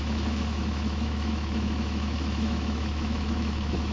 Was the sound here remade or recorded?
remade